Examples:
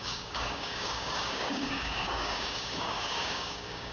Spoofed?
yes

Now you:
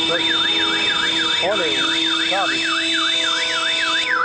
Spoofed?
no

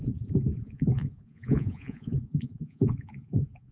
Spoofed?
yes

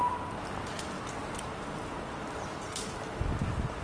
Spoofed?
no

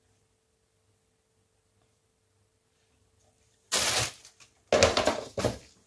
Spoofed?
no